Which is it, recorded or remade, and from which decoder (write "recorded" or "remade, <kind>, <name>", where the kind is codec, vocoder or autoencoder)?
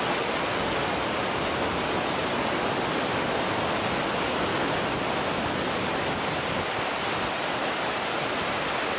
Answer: recorded